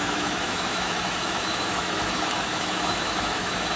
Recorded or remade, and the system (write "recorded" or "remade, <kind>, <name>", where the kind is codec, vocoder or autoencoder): remade, autoencoder, DAC-VAE